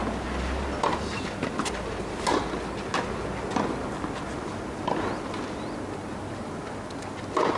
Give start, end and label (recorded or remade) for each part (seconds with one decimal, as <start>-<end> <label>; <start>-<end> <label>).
0.0-7.6 recorded